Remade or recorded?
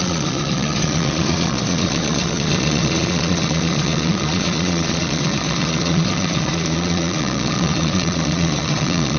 remade